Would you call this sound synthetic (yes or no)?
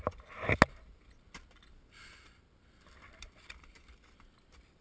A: no